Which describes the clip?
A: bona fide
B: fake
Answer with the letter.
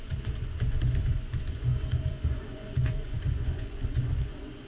B